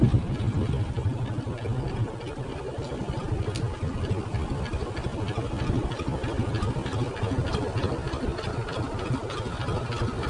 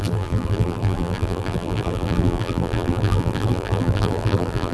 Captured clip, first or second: first